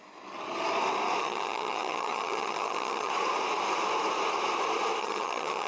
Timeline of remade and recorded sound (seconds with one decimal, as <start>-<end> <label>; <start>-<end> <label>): 0.0-1.2 recorded; 1.2-3.1 remade; 3.1-5.0 recorded; 5.0-5.7 remade